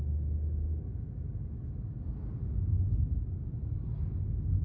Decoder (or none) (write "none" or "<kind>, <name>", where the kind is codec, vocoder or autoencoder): none